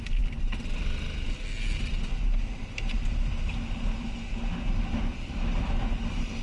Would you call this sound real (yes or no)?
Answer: yes